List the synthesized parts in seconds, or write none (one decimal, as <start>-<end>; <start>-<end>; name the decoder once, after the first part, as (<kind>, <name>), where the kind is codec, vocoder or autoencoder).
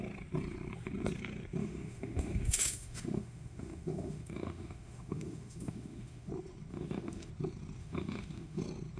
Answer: 1.6-6.3 (autoencoder, DAC-VAE); 6.7-7.3; 7.8-8.6